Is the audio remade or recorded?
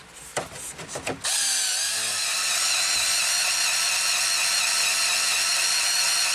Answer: recorded